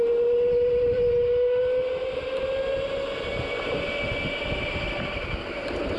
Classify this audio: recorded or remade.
recorded